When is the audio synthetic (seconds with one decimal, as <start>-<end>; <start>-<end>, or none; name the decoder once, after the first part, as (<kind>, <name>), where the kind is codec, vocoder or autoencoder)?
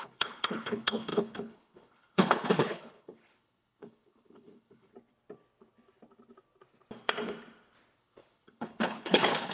0.0-4.9 (codec, HILCodec); 8.0-9.5